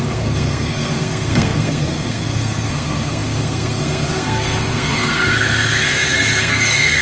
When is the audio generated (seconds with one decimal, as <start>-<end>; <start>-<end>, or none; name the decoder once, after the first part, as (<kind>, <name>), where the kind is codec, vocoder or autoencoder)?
0.0-7.0 (codec, SNAC)

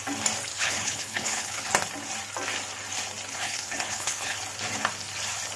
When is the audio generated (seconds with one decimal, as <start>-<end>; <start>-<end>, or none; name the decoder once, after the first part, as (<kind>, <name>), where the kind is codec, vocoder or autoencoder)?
0.5-1.7 (codec, HILCodec); 3.3-4.4

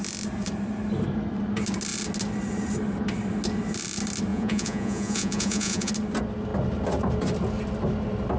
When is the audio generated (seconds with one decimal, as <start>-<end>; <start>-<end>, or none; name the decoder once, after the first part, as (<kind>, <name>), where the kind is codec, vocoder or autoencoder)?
4.3-5.9 (vocoder, Vocos)

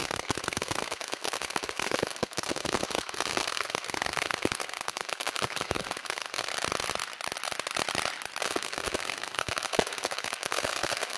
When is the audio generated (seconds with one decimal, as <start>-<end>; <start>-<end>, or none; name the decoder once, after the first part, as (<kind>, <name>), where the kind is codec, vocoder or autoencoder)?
0.0-6.5 (codec, SNAC); 8.4-11.2

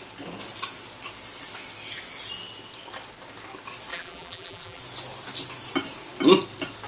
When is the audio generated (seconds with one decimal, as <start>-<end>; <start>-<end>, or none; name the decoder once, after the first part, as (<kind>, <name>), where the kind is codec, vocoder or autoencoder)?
3.9-4.8 (vocoder, BigVGAN v2)

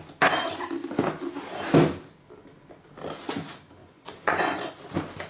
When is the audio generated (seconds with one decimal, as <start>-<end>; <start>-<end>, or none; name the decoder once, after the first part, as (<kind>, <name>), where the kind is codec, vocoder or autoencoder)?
3.8-4.7 (vocoder, Vocos)

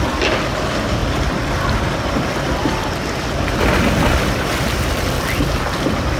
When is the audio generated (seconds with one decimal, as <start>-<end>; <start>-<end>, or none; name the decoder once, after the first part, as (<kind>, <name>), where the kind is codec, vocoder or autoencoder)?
none

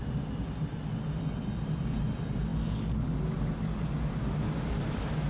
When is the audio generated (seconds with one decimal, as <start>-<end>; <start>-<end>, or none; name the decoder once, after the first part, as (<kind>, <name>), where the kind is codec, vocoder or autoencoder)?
none